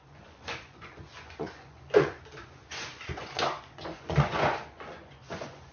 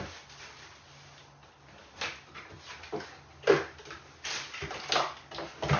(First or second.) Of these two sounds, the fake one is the first